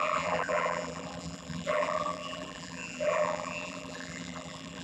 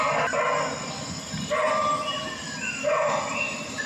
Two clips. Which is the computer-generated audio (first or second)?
first